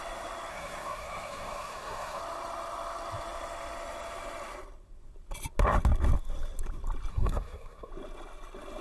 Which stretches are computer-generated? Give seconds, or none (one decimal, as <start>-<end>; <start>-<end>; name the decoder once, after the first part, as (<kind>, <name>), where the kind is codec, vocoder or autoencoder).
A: 0.5-2.2 (codec, SNAC); 7.1-7.9